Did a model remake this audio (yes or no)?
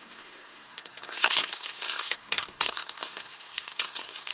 yes